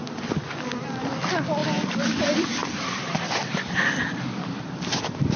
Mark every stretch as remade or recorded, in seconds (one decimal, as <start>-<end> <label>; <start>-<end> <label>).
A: 0.0-0.8 recorded; 0.8-5.4 remade